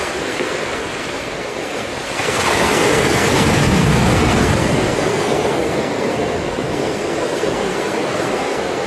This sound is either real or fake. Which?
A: fake